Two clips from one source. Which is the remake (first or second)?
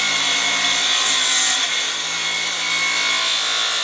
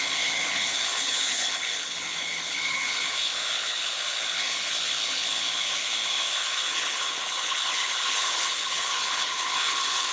second